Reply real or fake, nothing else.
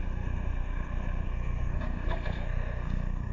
fake